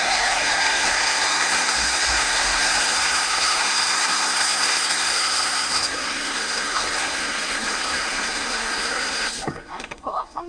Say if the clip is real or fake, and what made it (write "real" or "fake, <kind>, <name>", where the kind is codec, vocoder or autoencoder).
fake, codec, SNAC